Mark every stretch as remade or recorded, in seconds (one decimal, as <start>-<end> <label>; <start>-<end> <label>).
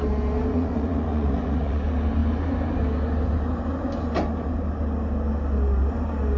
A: 0.0-0.5 recorded; 0.5-1.8 remade; 1.8-6.4 recorded